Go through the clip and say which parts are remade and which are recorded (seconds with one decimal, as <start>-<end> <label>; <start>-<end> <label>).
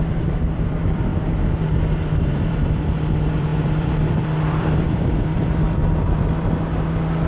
0.0-1.1 remade; 1.1-2.2 recorded; 2.2-7.3 remade